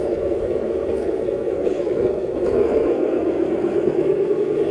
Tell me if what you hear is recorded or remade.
remade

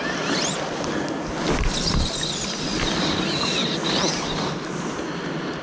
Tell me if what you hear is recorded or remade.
recorded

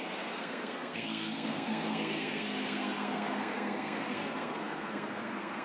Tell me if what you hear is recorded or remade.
remade